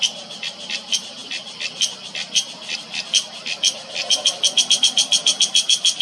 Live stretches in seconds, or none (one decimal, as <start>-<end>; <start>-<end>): none